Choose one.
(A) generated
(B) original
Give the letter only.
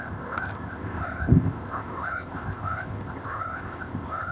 A